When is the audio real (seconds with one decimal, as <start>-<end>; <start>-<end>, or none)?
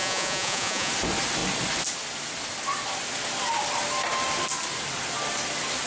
0.9-5.9